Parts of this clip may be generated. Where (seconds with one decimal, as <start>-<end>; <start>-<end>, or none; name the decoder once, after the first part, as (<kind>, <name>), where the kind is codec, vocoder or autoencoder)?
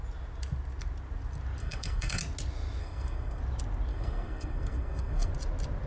1.6-2.2 (codec, SNAC); 2.8-3.4; 3.9-5.3